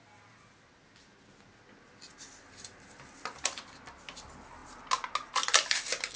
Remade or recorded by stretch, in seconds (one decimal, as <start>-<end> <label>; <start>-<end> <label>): 0.0-6.2 recorded